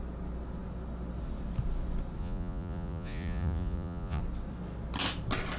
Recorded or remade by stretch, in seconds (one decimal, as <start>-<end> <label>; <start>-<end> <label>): 0.0-2.2 recorded; 2.2-4.2 remade; 4.2-5.6 recorded